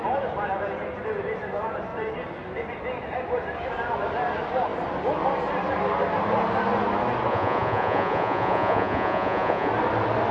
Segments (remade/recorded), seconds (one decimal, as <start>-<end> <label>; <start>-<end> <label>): 0.0-7.3 recorded; 7.3-9.7 remade; 9.7-10.3 recorded